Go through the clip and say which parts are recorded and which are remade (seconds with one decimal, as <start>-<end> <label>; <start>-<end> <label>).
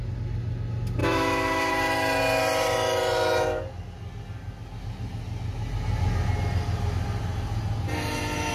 0.0-1.0 recorded; 1.0-1.7 remade; 1.7-8.5 recorded